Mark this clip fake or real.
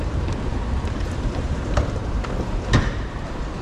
fake